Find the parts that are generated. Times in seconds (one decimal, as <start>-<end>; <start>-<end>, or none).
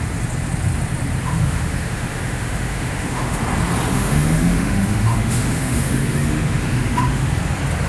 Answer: 1.2-3.4; 3.9-7.3